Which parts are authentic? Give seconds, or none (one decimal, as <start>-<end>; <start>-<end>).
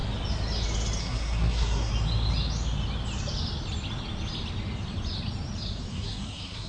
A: 0.0-1.0; 1.9-5.9